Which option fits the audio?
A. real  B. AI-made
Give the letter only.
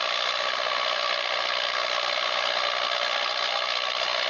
A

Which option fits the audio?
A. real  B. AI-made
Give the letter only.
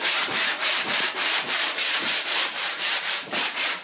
B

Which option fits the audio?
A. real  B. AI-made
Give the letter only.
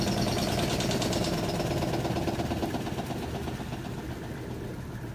A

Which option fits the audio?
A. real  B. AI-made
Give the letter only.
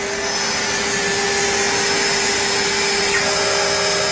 A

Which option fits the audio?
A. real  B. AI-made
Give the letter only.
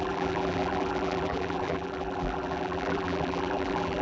B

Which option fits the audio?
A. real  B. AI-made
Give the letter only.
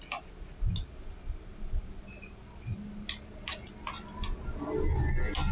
A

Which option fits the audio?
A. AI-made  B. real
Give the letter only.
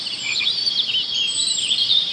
A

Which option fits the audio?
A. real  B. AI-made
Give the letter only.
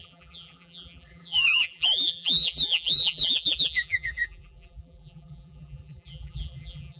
B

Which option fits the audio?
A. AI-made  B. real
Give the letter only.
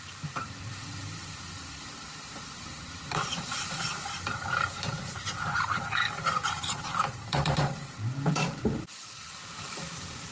A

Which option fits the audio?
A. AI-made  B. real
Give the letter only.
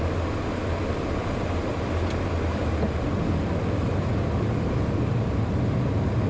B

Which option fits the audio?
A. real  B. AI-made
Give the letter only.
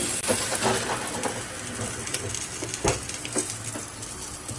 A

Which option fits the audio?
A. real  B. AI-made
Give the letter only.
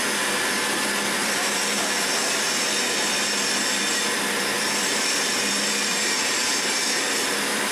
B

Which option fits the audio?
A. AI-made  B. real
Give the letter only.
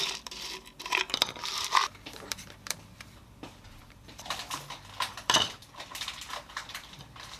A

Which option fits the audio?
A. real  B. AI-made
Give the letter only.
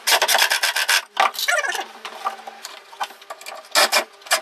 A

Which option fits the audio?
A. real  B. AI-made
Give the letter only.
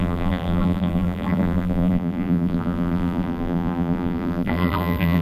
B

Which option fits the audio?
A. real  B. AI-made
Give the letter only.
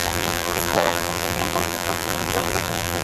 B